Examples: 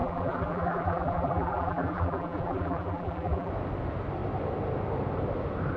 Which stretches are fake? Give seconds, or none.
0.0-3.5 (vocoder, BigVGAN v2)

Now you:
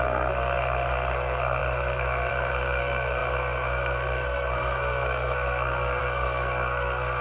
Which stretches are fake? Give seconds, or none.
0.0-7.2 (codec, SNAC)

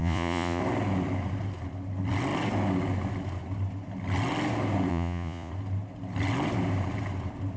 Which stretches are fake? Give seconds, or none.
0.0-0.6 (vocoder, Vocos); 4.9-5.5

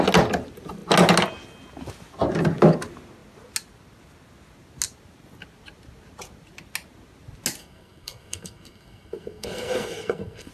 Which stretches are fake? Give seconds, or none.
7.6-10.5 (codec, SNAC)